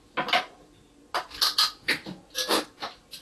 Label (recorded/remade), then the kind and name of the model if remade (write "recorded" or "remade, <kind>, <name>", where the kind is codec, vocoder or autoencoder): recorded